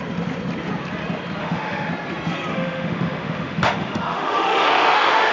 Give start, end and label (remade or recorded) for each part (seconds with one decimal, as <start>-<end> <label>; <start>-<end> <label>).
0.0-1.4 recorded; 1.4-1.9 remade; 1.9-2.5 recorded; 2.5-5.3 remade

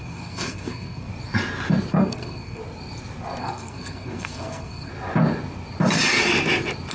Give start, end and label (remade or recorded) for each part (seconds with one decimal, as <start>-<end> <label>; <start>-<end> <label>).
0.0-1.1 remade; 1.1-1.9 recorded; 1.9-2.6 remade; 2.6-3.4 recorded; 3.4-4.9 remade; 4.9-6.9 recorded

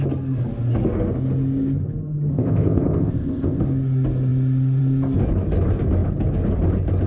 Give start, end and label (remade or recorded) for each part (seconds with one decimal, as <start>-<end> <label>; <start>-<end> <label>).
0.0-2.3 recorded; 2.3-3.6 remade; 3.6-7.1 recorded

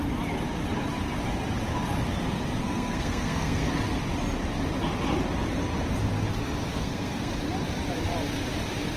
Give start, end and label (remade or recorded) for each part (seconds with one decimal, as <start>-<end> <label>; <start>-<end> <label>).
0.0-2.6 recorded; 2.6-3.7 remade; 3.7-6.7 recorded; 6.7-7.3 remade; 7.3-9.0 recorded

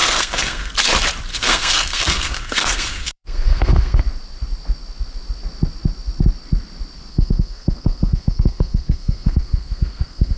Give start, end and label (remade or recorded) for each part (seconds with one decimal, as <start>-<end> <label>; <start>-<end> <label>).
0.0-0.7 remade; 0.7-1.3 recorded; 1.3-4.0 remade; 4.0-7.1 recorded; 7.1-10.4 remade